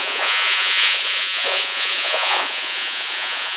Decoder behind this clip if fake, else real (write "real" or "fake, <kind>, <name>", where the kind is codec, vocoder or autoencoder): fake, vocoder, Vocos